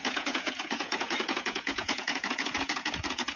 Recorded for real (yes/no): no